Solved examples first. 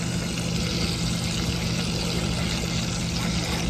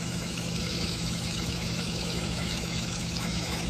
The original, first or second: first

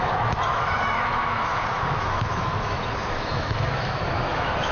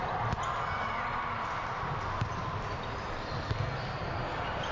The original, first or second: second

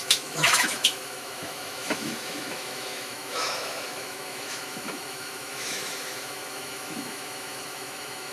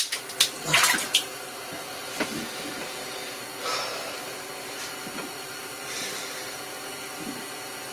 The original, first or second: second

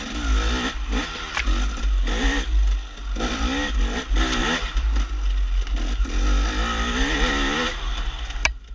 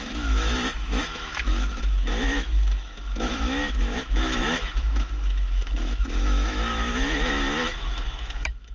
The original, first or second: first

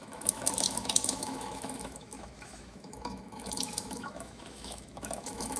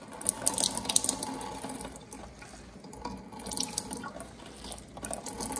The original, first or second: second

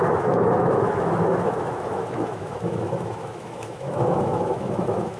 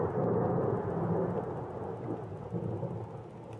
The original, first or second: second